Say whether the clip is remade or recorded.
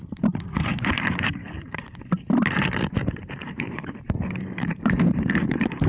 remade